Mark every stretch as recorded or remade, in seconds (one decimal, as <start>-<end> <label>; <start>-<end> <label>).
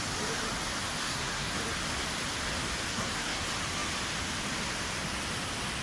0.0-1.0 recorded; 1.0-1.6 remade; 1.6-2.9 recorded; 2.9-3.4 remade; 3.4-5.8 recorded